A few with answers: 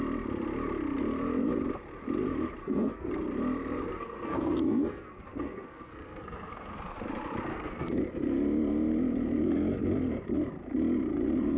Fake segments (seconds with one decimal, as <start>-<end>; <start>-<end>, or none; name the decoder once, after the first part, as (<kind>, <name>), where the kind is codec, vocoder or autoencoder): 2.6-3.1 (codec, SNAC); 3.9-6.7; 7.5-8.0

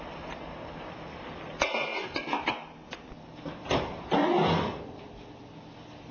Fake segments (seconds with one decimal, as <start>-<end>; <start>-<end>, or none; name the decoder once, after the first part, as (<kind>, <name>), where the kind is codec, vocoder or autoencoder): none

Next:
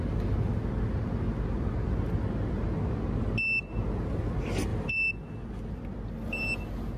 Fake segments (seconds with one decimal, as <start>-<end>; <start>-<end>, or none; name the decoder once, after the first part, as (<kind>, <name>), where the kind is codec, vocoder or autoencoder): 4.7-5.7 (vocoder, BigVGAN v2)

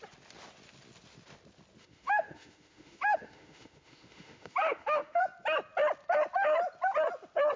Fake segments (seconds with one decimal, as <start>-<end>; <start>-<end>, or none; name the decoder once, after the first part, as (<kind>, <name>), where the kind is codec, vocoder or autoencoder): 1.8-5.2 (autoencoder, DAC-VAE)

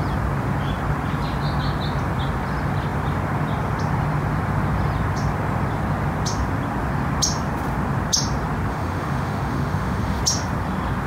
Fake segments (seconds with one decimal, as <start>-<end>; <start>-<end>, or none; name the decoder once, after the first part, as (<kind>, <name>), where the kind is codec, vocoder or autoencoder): 8.7-10.2 (autoencoder, DAC-VAE)

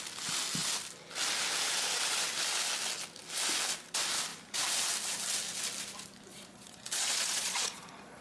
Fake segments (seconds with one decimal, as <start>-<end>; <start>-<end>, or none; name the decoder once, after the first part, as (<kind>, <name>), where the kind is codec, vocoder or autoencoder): 6.3-8.2 (vocoder, Vocos)

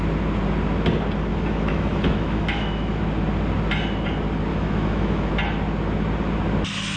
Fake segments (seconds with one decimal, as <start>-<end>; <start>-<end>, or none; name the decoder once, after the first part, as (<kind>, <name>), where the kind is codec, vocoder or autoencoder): 1.3-3.0 (autoencoder, DAC-VAE); 4.5-5.3